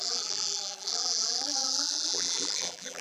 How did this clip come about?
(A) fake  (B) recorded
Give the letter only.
A